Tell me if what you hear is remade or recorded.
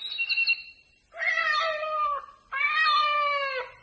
recorded